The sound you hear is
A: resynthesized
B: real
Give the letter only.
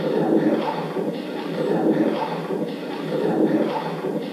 A